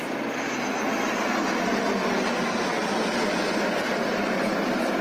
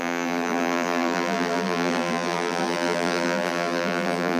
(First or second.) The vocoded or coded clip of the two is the second